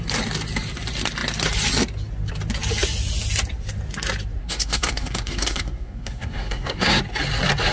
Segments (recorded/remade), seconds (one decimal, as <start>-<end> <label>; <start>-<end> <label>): 0.0-4.4 recorded; 4.4-7.0 remade; 7.0-7.7 recorded